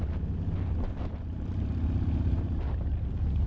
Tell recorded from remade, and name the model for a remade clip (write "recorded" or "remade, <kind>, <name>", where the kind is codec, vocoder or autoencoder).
recorded